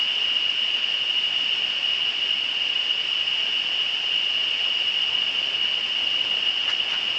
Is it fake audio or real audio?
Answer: fake